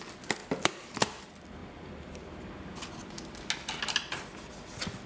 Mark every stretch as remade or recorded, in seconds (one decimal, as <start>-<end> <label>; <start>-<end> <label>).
0.0-0.4 recorded; 0.4-1.2 remade; 1.2-1.6 recorded; 1.6-2.5 remade; 2.5-5.1 recorded